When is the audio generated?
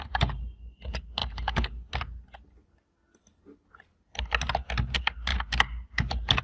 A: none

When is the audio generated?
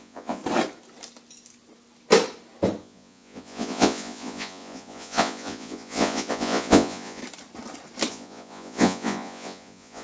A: 0.0-0.4 (vocoder, Vocos); 2.8-7.2; 8.1-10.0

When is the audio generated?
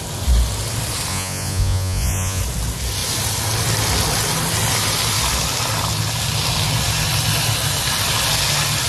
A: 1.1-2.4 (vocoder, Vocos)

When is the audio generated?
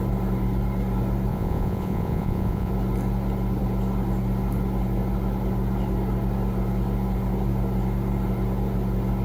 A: 1.3-2.7 (vocoder, Vocos)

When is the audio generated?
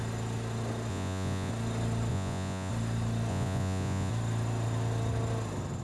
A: 0.9-1.5 (vocoder, Vocos); 2.1-2.7; 3.3-4.1